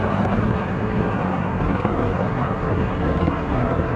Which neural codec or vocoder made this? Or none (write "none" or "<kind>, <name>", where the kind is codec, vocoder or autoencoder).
codec, SNAC